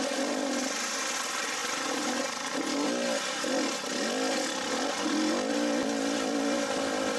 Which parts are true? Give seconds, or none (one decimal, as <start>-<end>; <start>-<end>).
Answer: 0.0-7.2